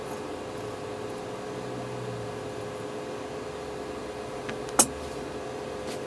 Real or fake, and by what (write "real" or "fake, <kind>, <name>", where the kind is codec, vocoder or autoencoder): real